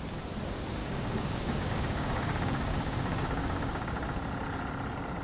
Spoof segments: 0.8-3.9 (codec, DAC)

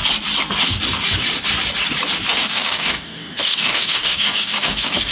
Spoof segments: 2.3-5.1 (codec, DAC)

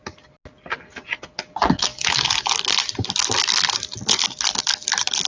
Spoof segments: none

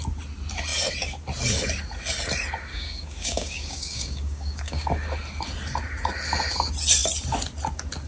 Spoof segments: 2.7-4.9 (codec, DAC)

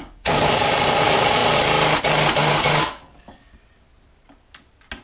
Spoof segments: 0.0-0.5 (codec, DAC); 2.4-3.5

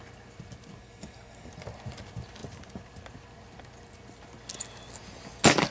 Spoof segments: 0.8-1.5 (codec, DAC)

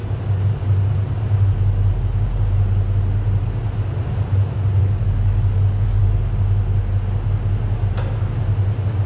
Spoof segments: 4.8-6.0 (codec, DAC)

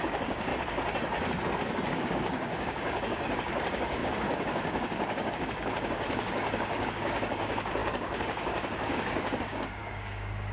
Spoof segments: 0.0-0.5 (codec, DAC); 1.9-10.5